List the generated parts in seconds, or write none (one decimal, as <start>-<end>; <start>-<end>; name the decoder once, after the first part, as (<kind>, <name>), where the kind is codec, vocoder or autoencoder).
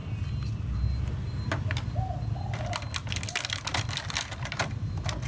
3.7-4.6 (vocoder, BigVGAN v2)